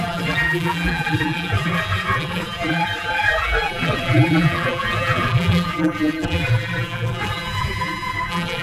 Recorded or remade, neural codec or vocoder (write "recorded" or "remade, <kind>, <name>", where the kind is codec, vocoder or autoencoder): remade, vocoder, BigVGAN v2